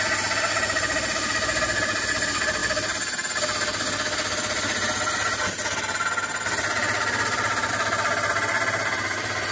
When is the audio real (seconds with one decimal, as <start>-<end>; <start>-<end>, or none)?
0.0-9.5